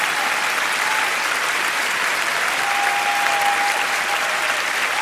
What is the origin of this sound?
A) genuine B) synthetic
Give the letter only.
A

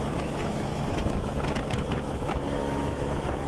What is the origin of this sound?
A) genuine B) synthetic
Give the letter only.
B